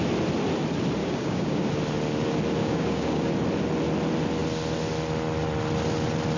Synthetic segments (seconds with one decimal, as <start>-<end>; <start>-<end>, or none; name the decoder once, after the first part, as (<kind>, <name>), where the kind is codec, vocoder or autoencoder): 1.0-1.7 (codec, DAC); 2.6-3.3